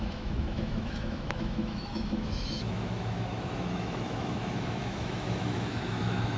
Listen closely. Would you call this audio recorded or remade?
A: remade